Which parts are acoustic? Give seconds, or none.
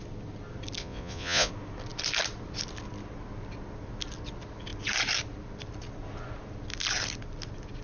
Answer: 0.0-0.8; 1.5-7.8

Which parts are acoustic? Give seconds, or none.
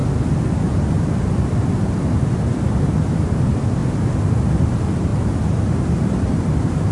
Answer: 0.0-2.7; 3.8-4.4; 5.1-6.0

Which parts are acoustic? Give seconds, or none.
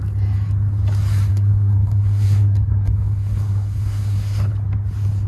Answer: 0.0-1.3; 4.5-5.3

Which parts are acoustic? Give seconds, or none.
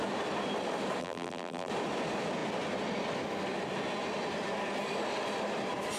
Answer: 0.0-1.0; 1.7-6.0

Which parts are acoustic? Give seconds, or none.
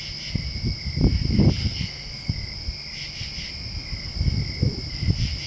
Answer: 0.0-1.6; 2.3-5.5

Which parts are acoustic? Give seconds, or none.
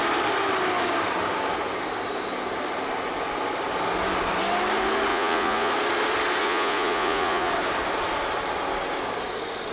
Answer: 0.0-5.1; 5.7-6.4; 7.5-9.7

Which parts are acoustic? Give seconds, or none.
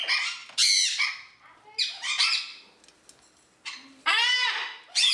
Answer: 0.0-5.1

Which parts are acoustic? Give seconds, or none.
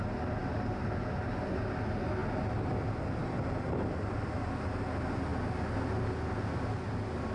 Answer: 0.0-7.3